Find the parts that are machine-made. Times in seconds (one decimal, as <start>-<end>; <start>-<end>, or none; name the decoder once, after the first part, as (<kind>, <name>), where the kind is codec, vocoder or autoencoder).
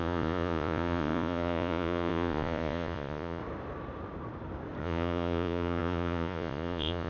0.0-3.4 (vocoder, Vocos); 4.8-7.1